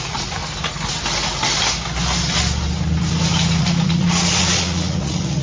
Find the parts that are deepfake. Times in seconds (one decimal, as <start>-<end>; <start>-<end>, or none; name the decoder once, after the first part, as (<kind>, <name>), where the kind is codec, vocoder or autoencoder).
0.0-0.4 (vocoder, Vocos); 3.6-5.4